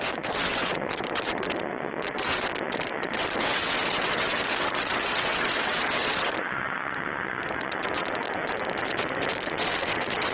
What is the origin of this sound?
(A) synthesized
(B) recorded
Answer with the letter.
A